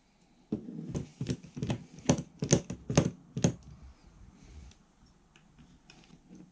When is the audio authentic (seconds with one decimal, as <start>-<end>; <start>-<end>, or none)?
0.0-4.0; 4.7-6.5